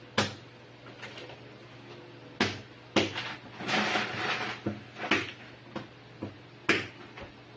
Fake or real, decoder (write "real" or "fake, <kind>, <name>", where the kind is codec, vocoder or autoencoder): real